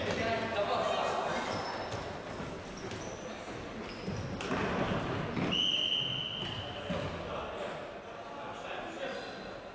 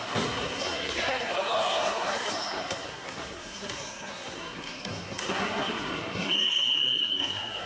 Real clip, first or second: first